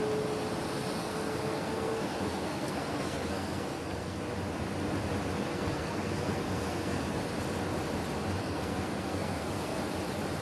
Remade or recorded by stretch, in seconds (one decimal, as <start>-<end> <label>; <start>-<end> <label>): 0.0-1.0 recorded; 1.0-4.2 remade; 4.2-5.5 recorded; 5.5-7.2 remade; 7.2-8.4 recorded; 8.4-9.8 remade; 9.8-10.4 recorded

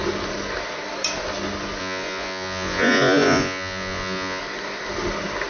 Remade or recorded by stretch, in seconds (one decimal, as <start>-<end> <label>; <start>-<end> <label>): 0.0-1.8 recorded; 1.8-4.4 remade; 4.4-5.5 recorded

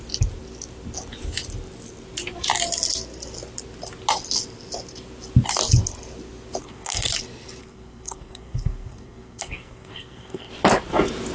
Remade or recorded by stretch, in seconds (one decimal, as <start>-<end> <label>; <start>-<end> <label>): 0.0-6.6 recorded; 6.6-7.1 remade; 7.1-7.6 recorded; 7.6-10.5 remade; 10.5-11.3 recorded

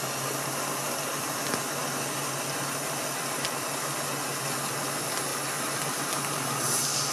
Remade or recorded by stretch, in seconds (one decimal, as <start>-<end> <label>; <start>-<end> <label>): 0.0-7.1 recorded